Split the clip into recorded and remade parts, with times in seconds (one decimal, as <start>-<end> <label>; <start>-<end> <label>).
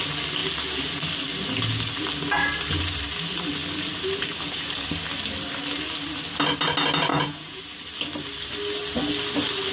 0.0-7.1 recorded; 7.1-7.6 remade; 7.6-9.7 recorded